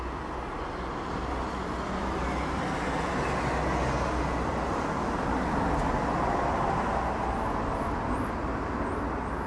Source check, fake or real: real